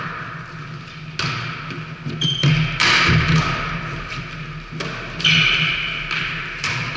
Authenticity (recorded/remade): recorded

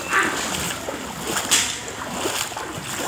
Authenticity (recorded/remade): recorded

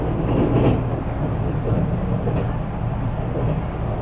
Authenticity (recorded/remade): recorded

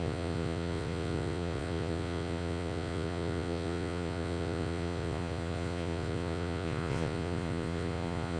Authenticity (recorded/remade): remade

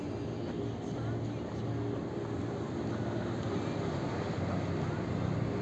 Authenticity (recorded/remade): recorded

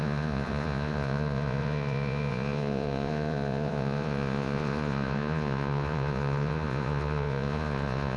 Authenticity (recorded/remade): remade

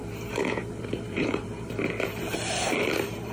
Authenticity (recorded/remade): remade